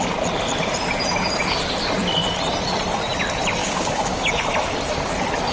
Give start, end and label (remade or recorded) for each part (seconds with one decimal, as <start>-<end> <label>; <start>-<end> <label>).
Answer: 0.0-3.6 recorded; 3.6-4.3 remade; 4.3-5.5 recorded